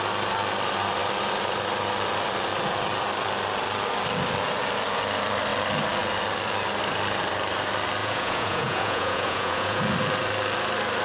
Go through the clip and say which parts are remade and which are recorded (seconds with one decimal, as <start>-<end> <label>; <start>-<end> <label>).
0.0-8.0 recorded; 8.0-9.8 remade; 9.8-11.0 recorded